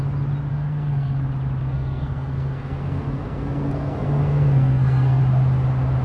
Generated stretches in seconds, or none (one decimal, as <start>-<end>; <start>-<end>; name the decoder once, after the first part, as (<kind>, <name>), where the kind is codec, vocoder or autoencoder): 0.5-1.2 (codec, SNAC); 1.6-5.2